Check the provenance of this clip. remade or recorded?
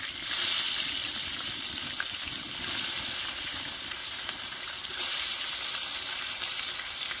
remade